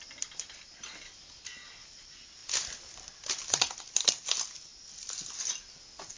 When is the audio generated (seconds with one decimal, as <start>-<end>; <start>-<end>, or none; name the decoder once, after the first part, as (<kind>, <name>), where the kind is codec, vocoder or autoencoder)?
none